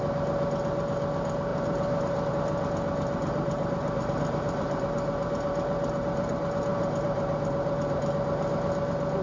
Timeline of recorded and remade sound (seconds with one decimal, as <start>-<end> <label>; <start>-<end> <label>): 0.0-1.5 recorded; 1.5-2.3 remade; 2.3-3.2 recorded; 3.2-6.3 remade; 6.3-6.7 recorded; 6.7-8.1 remade; 8.1-9.2 recorded